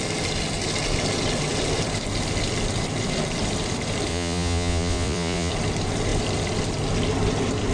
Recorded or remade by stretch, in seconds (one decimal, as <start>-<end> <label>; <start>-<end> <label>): 0.0-4.1 recorded; 4.1-5.5 remade; 5.5-7.7 recorded